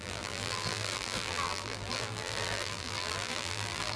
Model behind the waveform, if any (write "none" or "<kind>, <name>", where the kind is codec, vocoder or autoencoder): vocoder, BigVGAN v2